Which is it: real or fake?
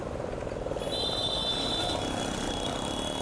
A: real